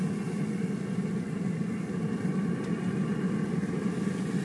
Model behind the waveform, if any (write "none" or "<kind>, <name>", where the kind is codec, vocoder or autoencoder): none